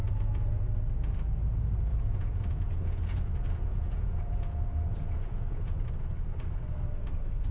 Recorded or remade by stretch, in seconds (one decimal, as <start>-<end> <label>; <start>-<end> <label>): 0.0-0.8 remade; 0.8-1.9 recorded; 1.9-5.9 remade; 5.9-7.5 recorded

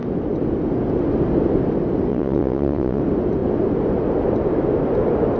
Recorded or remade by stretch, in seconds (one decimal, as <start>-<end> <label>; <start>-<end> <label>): 0.0-2.1 recorded; 2.1-3.0 remade; 3.0-5.4 recorded

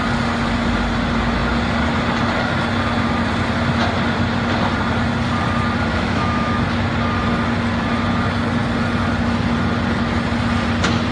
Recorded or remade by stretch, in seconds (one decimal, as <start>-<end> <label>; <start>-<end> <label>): 0.0-5.9 recorded; 5.9-6.6 remade; 6.6-11.1 recorded

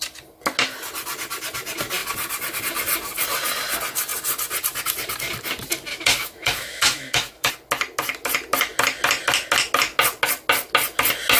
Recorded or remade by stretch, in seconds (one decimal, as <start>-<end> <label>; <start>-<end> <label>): 0.0-5.9 recorded; 5.9-7.5 remade; 7.5-11.4 recorded

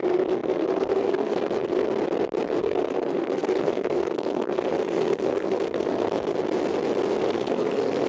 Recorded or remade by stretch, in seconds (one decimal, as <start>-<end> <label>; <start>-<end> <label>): 0.0-1.8 remade; 1.8-2.6 recorded; 2.6-6.3 remade; 6.3-7.2 recorded; 7.2-8.1 remade

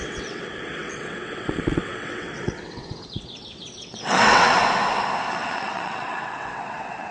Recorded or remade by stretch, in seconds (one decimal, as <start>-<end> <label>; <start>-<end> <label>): 0.0-4.6 remade; 4.6-5.3 recorded; 5.3-7.1 remade